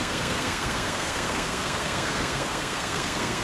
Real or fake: fake